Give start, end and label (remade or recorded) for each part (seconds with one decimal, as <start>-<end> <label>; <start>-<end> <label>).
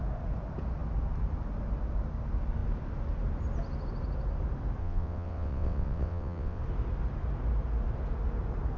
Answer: 0.0-4.8 recorded; 4.8-6.6 remade; 6.6-8.8 recorded